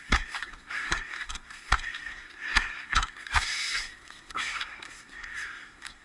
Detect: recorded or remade remade